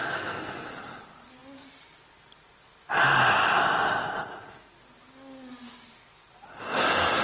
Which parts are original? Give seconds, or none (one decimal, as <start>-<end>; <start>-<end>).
0.7-7.2